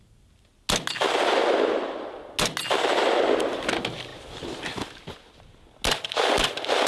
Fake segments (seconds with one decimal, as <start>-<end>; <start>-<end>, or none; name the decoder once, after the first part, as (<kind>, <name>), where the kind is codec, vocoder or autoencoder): none